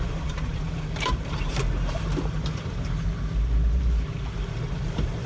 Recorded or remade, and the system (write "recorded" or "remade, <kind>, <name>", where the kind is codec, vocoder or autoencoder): remade, vocoder, BigVGAN v2